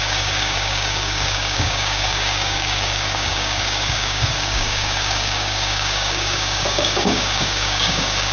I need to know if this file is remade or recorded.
remade